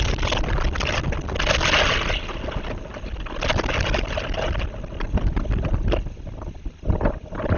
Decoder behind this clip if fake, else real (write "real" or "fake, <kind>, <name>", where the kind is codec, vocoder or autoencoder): real